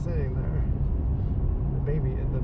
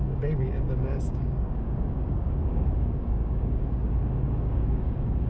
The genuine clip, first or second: first